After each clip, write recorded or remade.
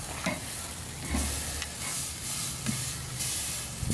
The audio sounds recorded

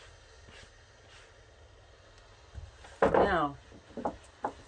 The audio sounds recorded